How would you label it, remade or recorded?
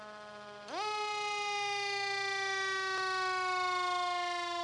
recorded